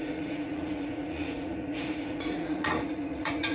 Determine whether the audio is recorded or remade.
remade